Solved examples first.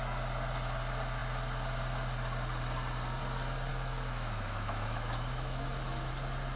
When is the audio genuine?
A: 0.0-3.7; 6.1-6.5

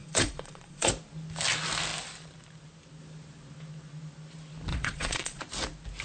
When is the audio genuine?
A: 0.9-4.7; 5.4-6.0

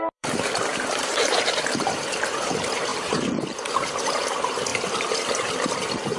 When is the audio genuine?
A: 4.7-6.2

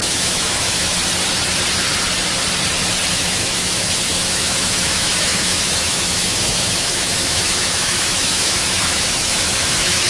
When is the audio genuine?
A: 1.0-3.1

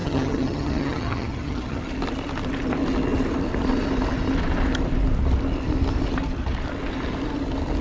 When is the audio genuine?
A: 1.8-7.8

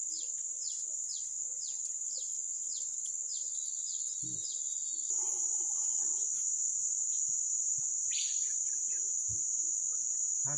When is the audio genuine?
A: 0.0-10.6

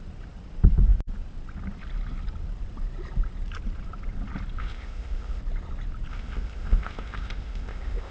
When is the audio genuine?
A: 0.0-4.6; 5.4-6.1